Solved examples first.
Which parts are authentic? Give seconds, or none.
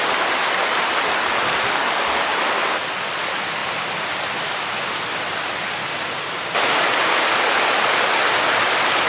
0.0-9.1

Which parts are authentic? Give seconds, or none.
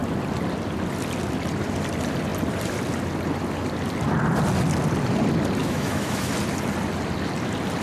0.0-5.6; 6.3-7.8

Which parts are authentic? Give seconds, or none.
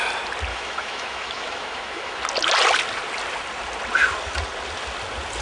0.0-0.5; 2.2-5.4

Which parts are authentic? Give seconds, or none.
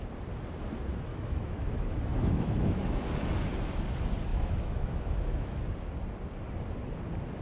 0.0-1.1; 3.0-4.3; 5.6-7.4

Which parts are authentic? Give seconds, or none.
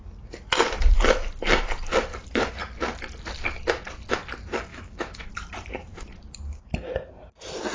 0.0-4.7; 5.3-7.7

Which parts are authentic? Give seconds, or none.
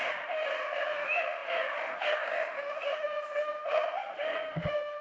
none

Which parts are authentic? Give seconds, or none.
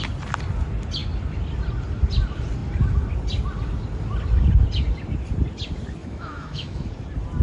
0.0-6.0; 6.9-7.4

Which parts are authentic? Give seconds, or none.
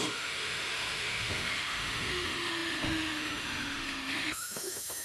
none